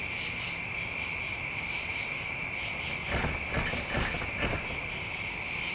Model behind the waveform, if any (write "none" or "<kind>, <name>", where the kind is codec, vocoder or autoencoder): none